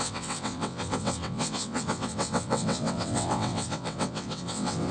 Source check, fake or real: fake